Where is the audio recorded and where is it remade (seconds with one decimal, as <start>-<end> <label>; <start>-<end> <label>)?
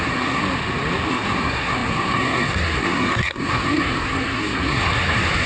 0.0-0.4 remade; 0.4-1.1 recorded; 1.1-5.5 remade